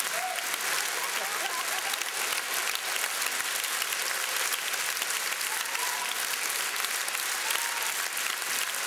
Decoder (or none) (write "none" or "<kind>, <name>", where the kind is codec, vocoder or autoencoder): none